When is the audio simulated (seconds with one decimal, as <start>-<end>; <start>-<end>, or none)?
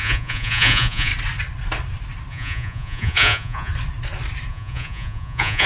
0.0-1.1; 2.3-3.7; 4.5-5.7